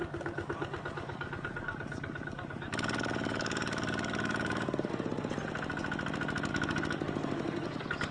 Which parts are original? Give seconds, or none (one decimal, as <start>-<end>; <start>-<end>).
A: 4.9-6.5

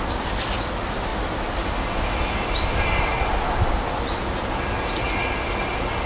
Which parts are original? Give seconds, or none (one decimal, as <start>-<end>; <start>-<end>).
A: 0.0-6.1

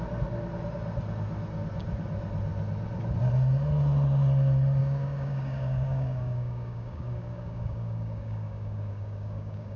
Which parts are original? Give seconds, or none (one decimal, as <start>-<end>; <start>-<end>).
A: 0.0-4.8

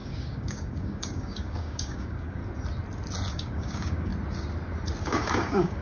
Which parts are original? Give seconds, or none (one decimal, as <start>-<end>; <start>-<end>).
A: 2.4-3.3; 4.1-5.0

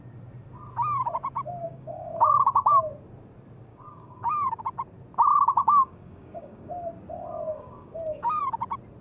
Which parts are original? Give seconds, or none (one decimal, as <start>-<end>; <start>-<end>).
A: 0.0-1.6; 2.8-3.7; 4.6-5.3; 6.7-7.5; 8.4-9.0

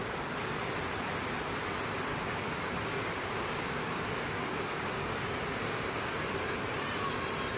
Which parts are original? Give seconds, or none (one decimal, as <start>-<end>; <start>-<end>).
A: 0.0-2.1; 5.8-7.6